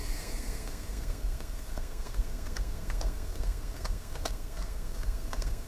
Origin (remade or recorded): remade